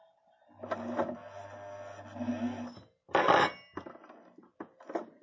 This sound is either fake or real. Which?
real